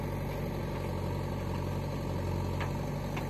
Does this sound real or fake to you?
real